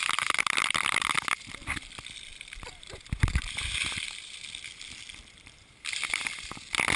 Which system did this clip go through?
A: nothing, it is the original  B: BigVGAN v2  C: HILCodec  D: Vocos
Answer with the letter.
B